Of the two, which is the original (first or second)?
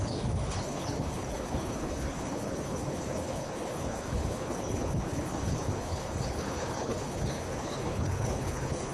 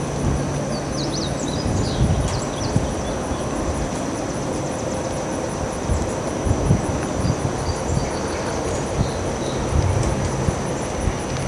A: second